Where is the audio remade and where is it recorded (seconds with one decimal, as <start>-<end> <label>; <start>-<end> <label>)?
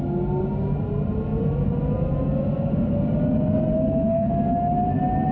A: 0.0-3.7 recorded; 3.7-4.3 remade; 4.3-5.3 recorded